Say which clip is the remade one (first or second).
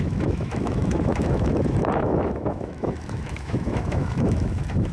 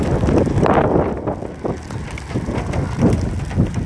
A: first